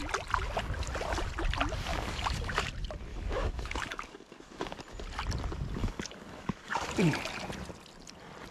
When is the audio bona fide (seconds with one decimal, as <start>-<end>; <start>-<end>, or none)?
0.0-1.9; 2.7-3.1; 4.8-5.8; 6.9-8.5